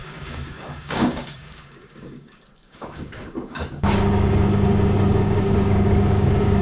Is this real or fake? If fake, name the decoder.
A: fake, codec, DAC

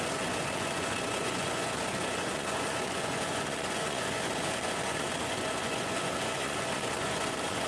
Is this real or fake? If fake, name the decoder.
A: fake, vocoder, Vocos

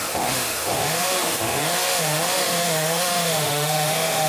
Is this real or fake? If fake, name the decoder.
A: fake, autoencoder, DAC-VAE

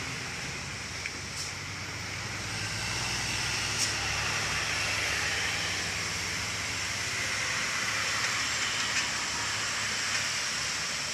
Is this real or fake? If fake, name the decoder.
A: real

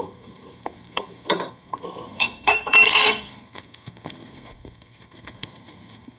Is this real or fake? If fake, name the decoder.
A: fake, codec, SNAC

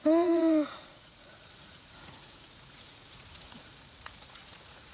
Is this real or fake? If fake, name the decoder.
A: fake, vocoder, Vocos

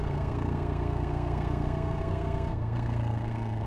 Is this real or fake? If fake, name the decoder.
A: fake, codec, SNAC